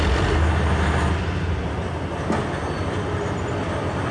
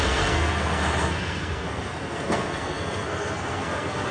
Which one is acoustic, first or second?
first